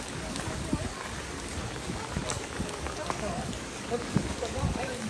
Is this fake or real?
fake